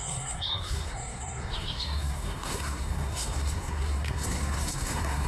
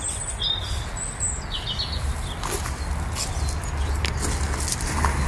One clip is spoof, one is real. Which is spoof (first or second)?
first